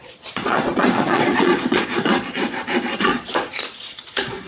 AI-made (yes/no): yes